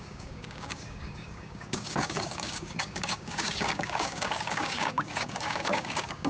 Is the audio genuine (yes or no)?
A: no